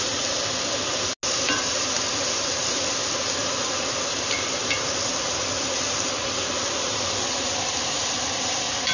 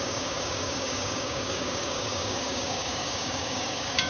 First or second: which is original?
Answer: first